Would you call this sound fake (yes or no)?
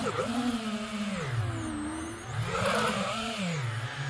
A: no